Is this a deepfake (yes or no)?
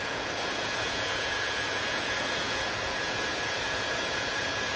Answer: yes